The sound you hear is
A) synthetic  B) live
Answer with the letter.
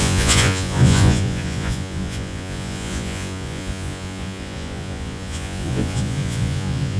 A